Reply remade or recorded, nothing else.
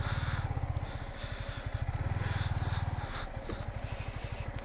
recorded